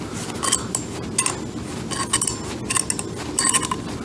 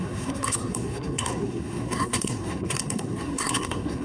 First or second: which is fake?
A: second